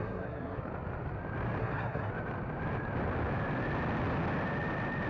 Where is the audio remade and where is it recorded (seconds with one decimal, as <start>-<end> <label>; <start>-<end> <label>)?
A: 0.0-0.6 remade; 0.6-1.6 recorded; 1.6-2.1 remade; 2.1-5.1 recorded